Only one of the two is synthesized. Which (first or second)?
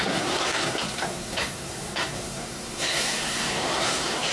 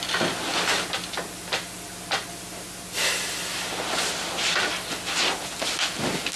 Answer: first